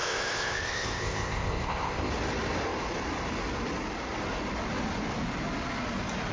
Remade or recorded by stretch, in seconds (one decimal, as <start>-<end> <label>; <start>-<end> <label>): 0.0-2.1 remade; 2.1-6.3 recorded